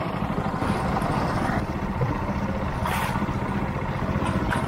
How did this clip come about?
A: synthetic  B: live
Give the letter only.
B